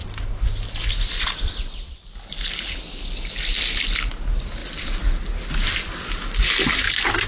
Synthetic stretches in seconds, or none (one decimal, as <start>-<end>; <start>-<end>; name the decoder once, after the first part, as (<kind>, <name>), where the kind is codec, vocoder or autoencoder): none